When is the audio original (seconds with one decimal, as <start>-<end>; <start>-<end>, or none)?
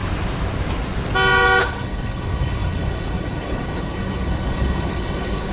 0.0-1.6